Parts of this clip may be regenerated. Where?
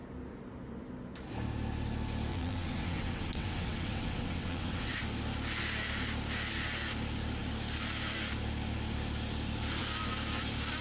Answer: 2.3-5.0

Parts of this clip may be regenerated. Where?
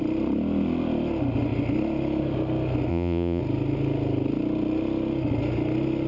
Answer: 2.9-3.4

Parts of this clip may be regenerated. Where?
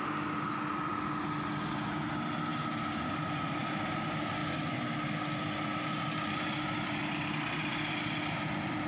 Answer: none